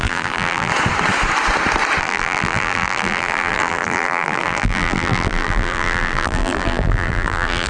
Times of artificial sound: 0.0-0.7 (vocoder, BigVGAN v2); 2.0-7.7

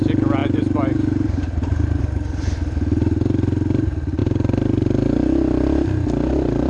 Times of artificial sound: 0.4-2.0 (vocoder, BigVGAN v2)

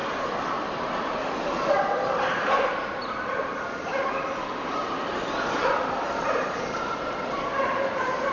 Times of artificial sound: 1.8-3.5 (vocoder, BigVGAN v2); 5.7-8.3

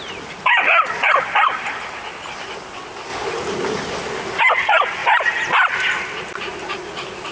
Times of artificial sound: 5.0-6.2 (vocoder, BigVGAN v2)

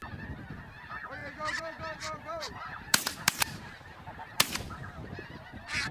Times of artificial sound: 1.2-4.7 (vocoder, BigVGAN v2)

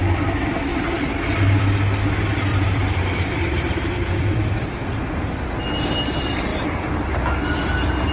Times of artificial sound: 0.7-1.6 (vocoder, BigVGAN v2); 2.5-5.2

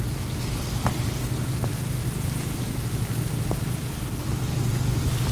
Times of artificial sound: none